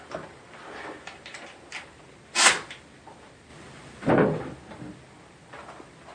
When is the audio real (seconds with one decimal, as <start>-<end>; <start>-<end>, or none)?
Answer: 0.0-6.1